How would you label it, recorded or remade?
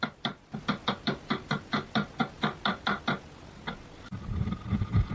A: recorded